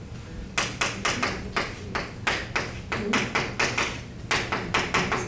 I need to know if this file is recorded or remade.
recorded